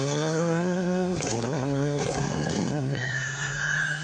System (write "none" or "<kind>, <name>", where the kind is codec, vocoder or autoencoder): codec, SNAC